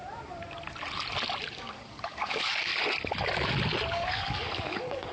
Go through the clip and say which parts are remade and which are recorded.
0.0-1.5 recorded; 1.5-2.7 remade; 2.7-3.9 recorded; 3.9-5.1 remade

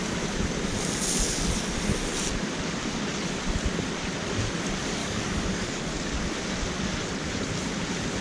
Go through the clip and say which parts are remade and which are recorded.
0.0-5.0 recorded; 5.0-5.9 remade; 5.9-8.2 recorded

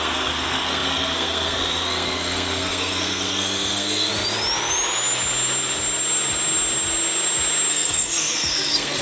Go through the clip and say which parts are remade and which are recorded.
0.0-4.1 remade; 4.1-7.7 recorded; 7.7-9.0 remade

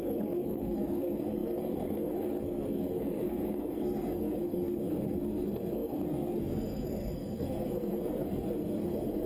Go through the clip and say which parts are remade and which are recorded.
0.0-9.3 remade

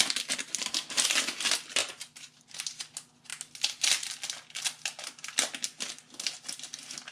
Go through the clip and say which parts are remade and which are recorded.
0.0-1.8 recorded; 1.8-2.5 remade; 2.5-7.1 recorded

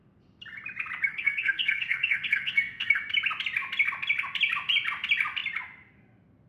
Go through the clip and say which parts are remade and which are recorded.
0.0-1.1 recorded; 1.1-3.0 remade; 3.0-6.5 recorded